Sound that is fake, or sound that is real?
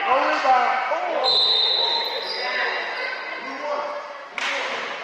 real